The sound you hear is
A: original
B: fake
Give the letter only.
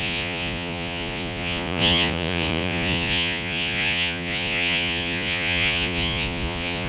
B